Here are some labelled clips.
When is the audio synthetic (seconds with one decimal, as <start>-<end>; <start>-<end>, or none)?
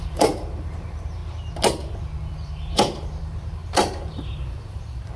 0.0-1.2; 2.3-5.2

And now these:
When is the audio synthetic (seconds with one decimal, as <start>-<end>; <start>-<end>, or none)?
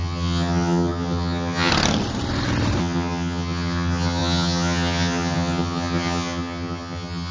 0.0-1.7; 2.8-7.3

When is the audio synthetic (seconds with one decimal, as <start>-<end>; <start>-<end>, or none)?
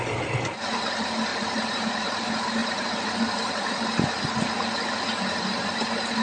1.3-2.1; 2.6-3.7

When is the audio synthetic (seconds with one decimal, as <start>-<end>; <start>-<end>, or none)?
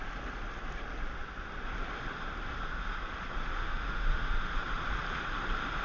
3.6-4.5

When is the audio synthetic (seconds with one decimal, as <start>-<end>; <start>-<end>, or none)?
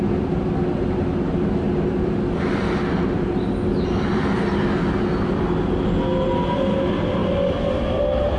none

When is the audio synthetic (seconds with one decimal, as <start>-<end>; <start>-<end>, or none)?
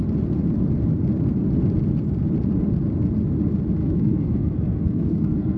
3.8-5.6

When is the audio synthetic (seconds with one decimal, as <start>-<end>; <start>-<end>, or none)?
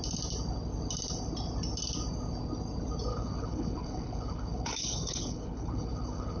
3.1-6.4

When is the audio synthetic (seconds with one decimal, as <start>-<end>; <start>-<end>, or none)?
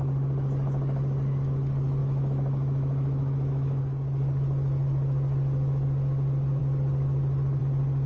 2.0-3.8